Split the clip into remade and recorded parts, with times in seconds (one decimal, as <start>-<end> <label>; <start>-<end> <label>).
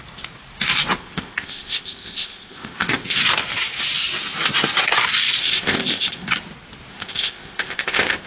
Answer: 0.0-1.0 recorded; 1.0-3.2 remade; 3.2-5.4 recorded; 5.4-6.3 remade; 6.3-6.9 recorded; 6.9-8.3 remade